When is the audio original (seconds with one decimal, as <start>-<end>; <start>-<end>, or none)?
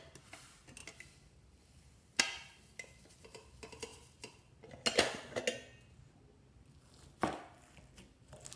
0.0-8.6